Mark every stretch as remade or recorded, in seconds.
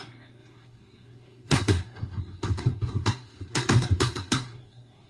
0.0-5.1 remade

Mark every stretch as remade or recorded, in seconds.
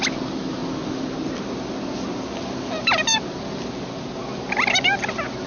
0.0-5.5 recorded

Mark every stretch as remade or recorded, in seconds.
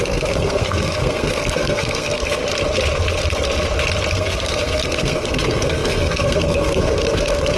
0.0-2.4 remade; 2.4-4.1 recorded; 4.1-7.6 remade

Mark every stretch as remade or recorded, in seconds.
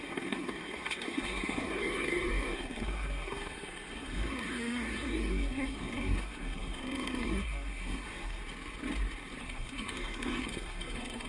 0.0-8.4 remade; 8.4-9.4 recorded; 9.4-11.3 remade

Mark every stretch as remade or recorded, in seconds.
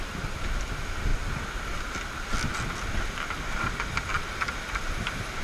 0.0-5.4 recorded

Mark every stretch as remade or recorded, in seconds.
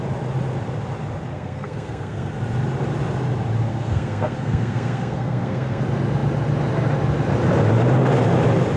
0.0-1.3 recorded; 1.3-2.3 remade; 2.3-3.7 recorded; 3.7-5.8 remade; 5.8-8.8 recorded